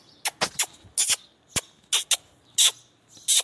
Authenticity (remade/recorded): recorded